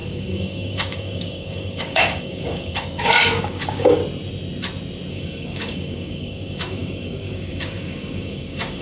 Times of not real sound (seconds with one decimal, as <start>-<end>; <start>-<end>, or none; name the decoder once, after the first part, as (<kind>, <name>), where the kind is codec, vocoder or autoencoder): 0.0-4.0 (codec, DAC); 5.1-8.8